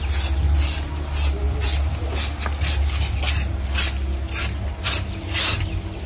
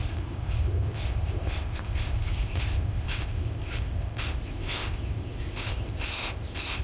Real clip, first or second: first